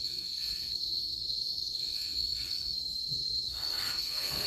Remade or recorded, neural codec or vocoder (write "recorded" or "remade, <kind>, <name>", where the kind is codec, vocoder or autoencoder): remade, codec, SNAC